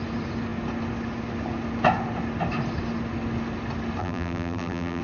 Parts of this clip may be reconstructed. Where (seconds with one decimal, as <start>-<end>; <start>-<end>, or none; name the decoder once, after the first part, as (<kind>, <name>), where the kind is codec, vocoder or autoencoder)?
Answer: 4.0-5.0 (vocoder, BigVGAN v2)